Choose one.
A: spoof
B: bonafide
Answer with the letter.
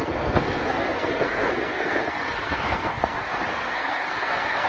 A